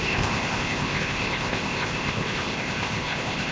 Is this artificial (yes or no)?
yes